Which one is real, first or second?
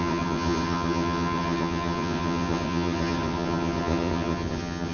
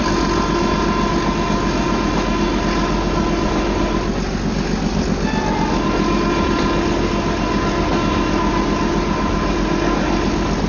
second